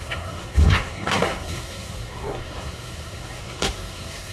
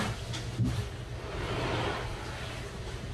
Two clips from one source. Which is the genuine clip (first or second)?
second